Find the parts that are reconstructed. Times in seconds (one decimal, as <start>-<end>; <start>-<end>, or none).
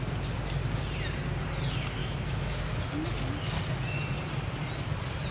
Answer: 2.0-2.8